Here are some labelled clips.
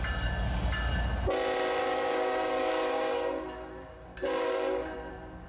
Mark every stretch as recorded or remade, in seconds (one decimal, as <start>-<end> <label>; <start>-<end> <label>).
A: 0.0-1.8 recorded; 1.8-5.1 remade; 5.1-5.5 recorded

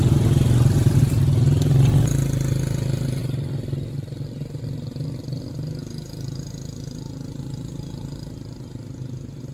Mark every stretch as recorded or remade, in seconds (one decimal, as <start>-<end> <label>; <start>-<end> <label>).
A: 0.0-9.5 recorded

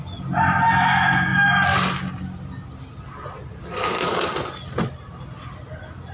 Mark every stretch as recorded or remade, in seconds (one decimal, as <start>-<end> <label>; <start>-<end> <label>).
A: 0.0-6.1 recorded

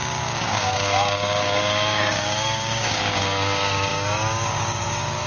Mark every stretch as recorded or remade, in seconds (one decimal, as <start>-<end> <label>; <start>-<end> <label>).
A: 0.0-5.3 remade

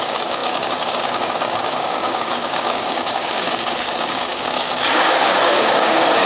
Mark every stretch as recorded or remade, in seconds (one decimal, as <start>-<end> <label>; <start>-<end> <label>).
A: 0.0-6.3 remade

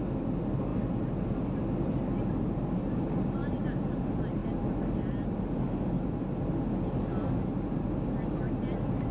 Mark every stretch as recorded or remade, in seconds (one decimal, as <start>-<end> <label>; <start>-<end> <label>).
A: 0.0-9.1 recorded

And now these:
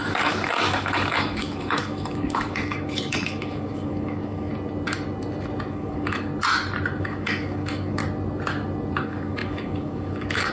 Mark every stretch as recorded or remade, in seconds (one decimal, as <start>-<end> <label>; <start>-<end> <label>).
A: 0.0-4.5 remade; 4.5-5.7 recorded; 5.7-6.3 remade; 6.3-7.0 recorded; 7.0-8.0 remade; 8.0-9.0 recorded; 9.0-10.5 remade

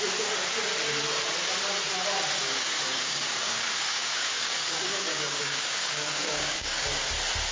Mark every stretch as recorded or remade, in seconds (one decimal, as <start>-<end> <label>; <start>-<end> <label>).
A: 0.0-2.4 recorded; 2.4-6.9 remade; 6.9-7.5 recorded